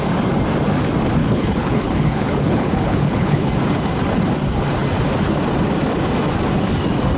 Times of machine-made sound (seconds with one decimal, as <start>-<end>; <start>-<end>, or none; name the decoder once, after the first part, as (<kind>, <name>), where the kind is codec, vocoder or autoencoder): 1.2-3.5 (codec, HILCodec)